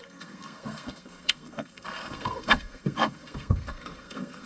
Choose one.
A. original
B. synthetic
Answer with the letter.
B